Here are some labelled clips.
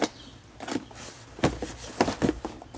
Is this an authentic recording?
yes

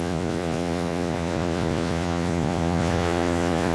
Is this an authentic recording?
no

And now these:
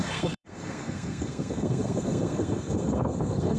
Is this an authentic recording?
no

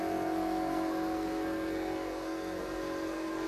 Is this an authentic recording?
no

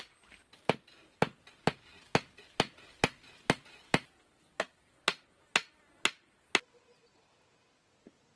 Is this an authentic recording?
yes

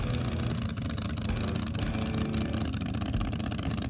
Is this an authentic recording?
yes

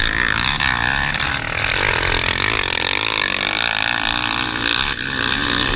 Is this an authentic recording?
yes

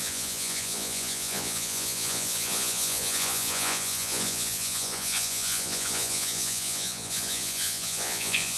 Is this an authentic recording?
no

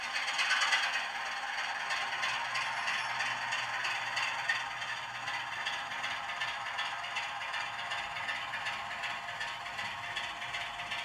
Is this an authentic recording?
yes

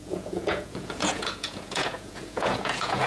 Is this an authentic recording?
no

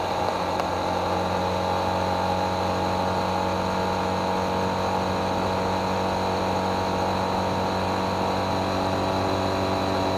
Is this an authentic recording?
yes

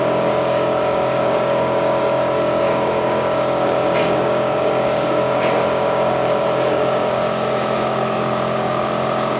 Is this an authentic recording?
no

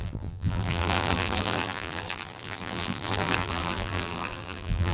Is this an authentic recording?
no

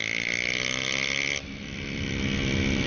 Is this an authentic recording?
no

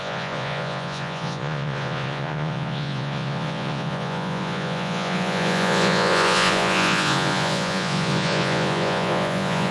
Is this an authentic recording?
no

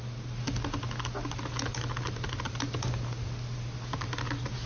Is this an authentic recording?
yes